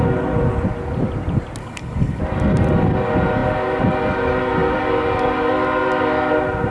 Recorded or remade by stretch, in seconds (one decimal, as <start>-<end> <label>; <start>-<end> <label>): 0.0-1.6 recorded; 1.6-2.2 remade; 2.2-6.7 recorded